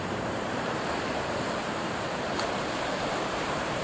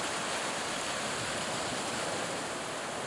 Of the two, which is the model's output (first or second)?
first